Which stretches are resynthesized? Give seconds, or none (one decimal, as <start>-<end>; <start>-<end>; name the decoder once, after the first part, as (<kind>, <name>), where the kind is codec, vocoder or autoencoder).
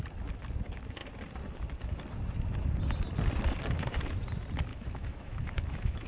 4.7-6.1 (autoencoder, DAC-VAE)